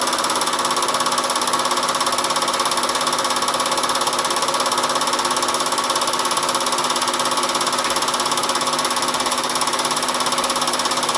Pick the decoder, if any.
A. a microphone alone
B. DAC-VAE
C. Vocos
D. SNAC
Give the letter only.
A